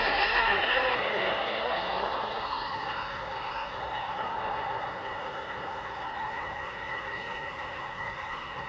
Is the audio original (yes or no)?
no